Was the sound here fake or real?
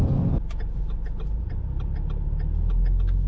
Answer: real